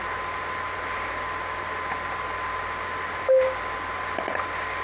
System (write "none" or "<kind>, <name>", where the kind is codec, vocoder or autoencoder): none